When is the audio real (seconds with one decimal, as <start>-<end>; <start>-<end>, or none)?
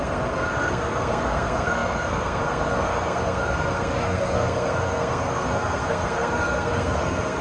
none